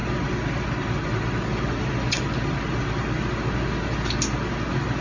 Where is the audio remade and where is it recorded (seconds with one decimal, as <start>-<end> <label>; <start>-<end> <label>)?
0.0-5.0 recorded